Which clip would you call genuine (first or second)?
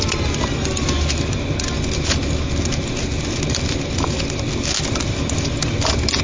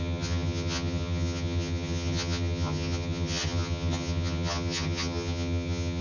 first